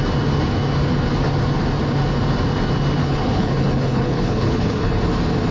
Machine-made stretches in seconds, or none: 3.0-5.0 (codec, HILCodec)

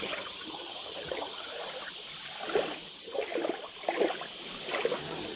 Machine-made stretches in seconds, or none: 0.0-1.5 (vocoder, HiFi-GAN); 2.9-3.3; 5.0-5.4

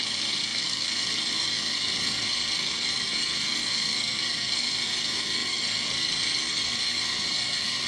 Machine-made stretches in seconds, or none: 0.0-7.9 (codec, SNAC)

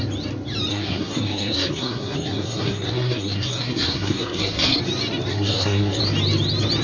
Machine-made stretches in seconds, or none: 0.7-4.8 (codec, SNAC); 5.3-6.0